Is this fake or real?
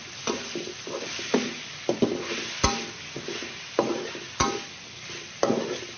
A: real